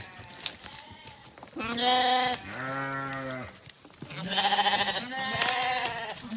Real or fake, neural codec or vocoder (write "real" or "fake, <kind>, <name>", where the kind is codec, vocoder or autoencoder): real